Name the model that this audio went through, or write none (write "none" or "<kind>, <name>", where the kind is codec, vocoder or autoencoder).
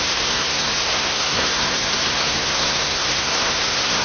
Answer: codec, SNAC